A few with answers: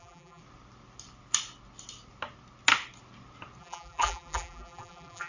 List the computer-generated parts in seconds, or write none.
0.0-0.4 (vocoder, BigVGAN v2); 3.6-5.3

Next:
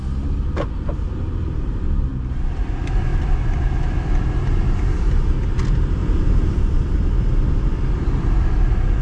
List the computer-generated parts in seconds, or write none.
3.1-3.7 (vocoder, BigVGAN v2); 6.0-6.6

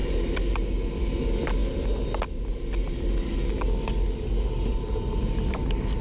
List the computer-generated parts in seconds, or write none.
0.0-0.7 (vocoder, BigVGAN v2)